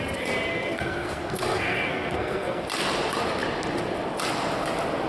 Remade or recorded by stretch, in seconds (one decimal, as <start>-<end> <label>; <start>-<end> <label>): 0.0-0.5 recorded; 0.5-2.6 remade; 2.6-5.1 recorded